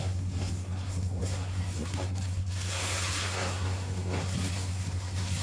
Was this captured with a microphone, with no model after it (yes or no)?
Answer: no